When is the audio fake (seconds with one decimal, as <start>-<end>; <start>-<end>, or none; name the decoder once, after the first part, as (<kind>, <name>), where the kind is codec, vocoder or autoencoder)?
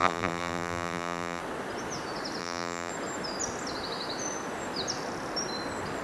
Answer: 0.0-1.4 (vocoder, BigVGAN v2); 2.4-2.9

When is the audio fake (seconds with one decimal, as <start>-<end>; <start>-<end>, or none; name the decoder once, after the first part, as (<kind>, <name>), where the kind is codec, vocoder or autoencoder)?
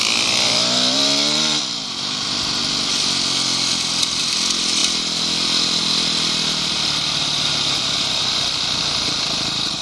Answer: 0.0-2.6 (vocoder, BigVGAN v2); 4.2-4.8; 7.5-9.8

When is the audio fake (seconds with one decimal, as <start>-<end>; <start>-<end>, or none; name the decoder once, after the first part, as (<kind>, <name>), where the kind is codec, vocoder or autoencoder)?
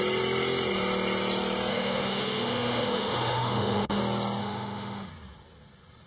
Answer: 1.7-4.0 (autoencoder, DAC-VAE); 4.4-5.1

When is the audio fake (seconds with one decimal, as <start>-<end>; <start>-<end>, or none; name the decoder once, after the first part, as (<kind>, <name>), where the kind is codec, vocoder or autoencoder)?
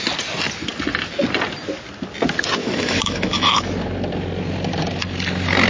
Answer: 2.6-3.6 (autoencoder, DAC-VAE)